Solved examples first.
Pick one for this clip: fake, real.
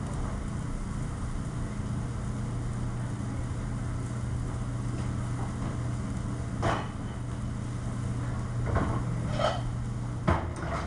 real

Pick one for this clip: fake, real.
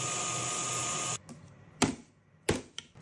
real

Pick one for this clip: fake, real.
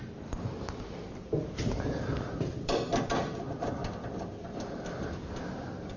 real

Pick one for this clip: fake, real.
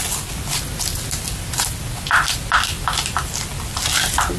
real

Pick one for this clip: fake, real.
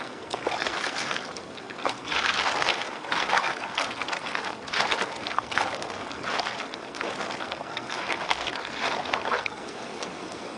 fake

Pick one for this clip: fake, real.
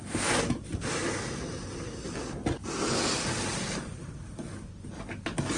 real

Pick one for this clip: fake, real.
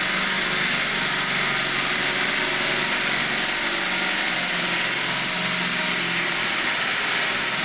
real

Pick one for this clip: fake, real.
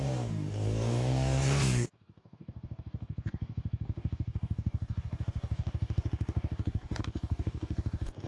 fake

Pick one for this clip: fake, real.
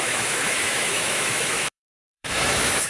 fake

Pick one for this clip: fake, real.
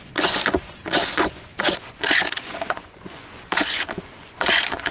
fake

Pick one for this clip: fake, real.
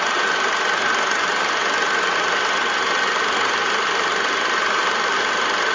real